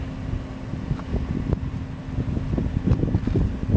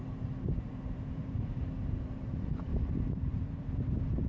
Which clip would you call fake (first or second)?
second